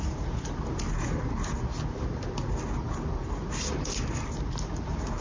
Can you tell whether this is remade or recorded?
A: recorded